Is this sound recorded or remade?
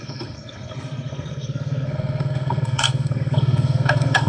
remade